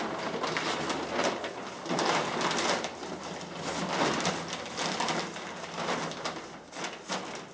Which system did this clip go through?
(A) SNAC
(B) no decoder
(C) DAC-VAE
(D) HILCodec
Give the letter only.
B